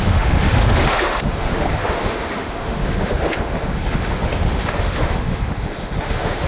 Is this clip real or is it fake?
fake